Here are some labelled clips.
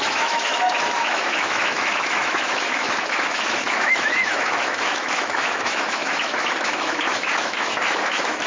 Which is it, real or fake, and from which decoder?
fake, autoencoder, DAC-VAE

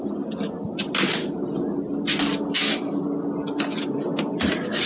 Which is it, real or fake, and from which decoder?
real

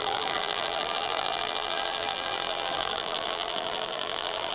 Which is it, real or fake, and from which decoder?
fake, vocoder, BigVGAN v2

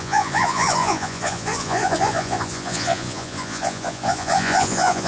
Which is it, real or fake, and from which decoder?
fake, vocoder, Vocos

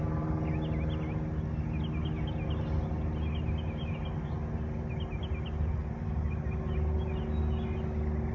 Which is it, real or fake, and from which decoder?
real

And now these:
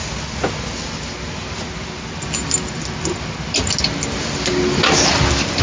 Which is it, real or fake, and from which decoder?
real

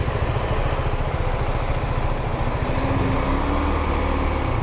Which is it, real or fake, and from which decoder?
real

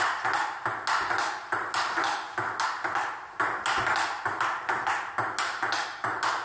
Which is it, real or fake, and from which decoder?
real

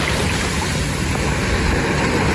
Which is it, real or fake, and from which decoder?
real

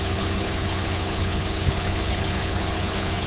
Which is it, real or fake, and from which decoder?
fake, codec, HILCodec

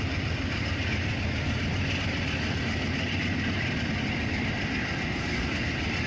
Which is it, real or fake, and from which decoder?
fake, vocoder, BigVGAN v2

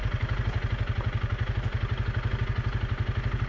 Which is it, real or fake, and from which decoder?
real